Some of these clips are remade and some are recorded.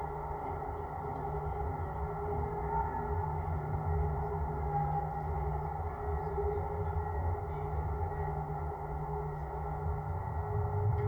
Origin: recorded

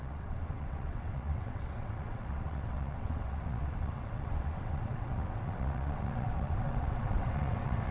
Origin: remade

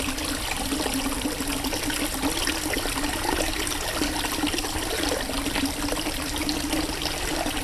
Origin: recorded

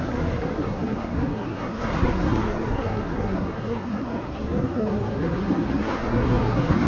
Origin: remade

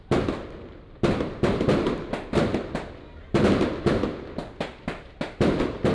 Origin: recorded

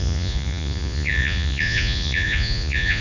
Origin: remade